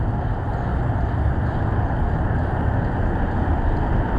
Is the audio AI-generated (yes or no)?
no